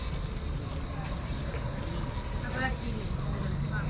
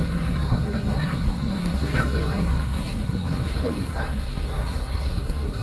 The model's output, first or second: second